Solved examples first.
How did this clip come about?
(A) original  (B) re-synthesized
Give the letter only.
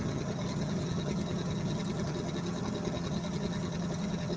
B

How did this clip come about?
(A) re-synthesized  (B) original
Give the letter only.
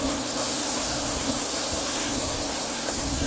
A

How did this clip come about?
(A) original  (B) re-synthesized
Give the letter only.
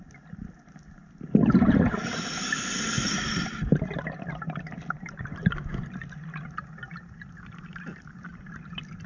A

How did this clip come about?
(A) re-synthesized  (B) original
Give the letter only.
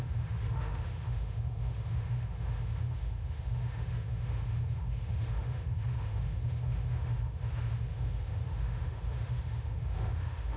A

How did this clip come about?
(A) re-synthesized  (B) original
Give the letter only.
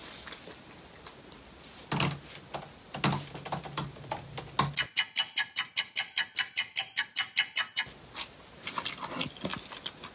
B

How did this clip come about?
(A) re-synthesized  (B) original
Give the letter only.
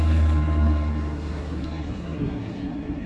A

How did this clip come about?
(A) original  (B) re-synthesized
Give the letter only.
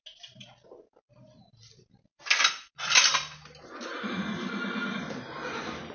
A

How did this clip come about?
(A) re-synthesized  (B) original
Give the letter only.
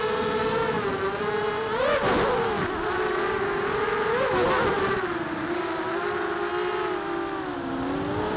B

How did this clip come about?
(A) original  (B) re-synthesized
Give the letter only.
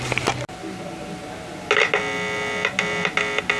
A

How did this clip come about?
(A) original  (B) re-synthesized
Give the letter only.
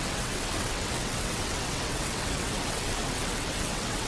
B